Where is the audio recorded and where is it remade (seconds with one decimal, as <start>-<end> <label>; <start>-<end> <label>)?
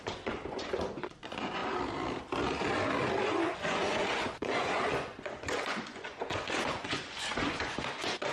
0.0-1.6 remade; 1.6-3.4 recorded; 3.4-8.3 remade